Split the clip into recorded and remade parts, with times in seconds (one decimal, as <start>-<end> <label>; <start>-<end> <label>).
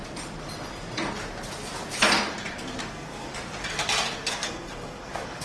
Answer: 0.0-2.9 recorded; 2.9-3.3 remade; 3.3-4.3 recorded; 4.3-5.4 remade